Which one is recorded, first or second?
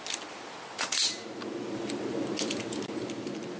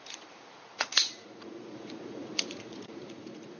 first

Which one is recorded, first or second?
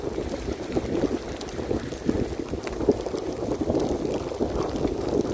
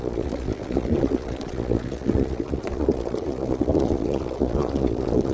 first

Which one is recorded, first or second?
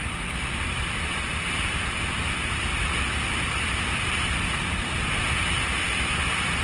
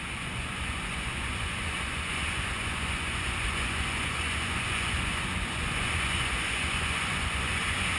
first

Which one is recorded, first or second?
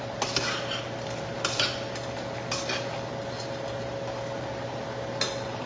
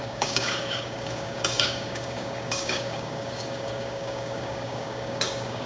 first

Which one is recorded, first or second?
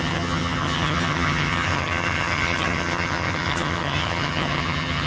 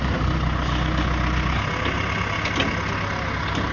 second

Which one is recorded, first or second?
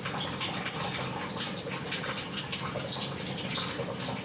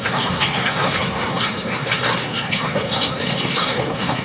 first